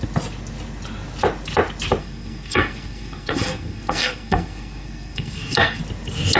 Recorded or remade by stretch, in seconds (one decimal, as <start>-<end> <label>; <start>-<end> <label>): 0.0-2.0 recorded; 2.0-5.8 remade; 5.8-6.4 recorded